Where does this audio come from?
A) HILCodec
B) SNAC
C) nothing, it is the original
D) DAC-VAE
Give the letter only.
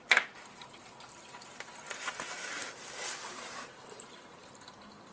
C